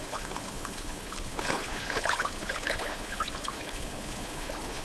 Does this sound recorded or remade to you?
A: remade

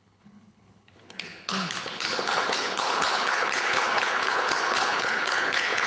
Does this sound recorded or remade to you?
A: remade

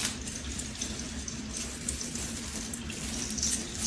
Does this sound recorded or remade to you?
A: recorded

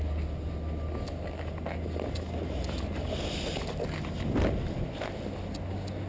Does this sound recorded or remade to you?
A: recorded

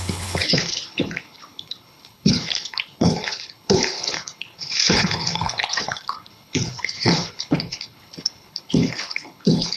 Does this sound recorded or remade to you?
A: remade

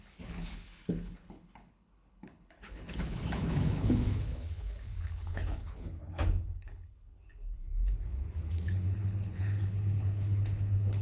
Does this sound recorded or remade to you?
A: remade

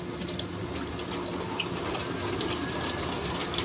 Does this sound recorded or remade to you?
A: recorded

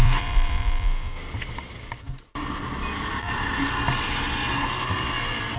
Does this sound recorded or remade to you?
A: recorded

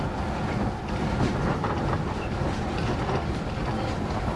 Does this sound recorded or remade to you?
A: recorded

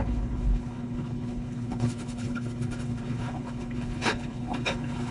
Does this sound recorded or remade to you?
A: remade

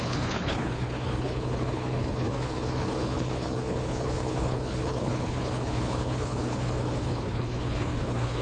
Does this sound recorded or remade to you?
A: remade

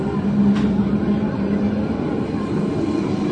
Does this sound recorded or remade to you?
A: recorded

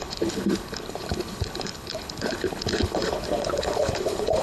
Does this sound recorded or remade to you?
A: remade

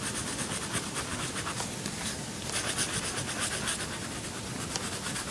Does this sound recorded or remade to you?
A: recorded